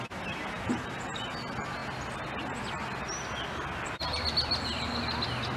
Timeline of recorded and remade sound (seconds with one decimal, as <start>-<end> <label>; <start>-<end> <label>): 0.0-5.6 recorded